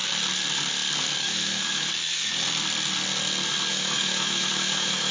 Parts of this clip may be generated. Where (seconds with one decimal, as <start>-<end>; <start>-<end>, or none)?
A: 1.2-1.9; 3.7-5.1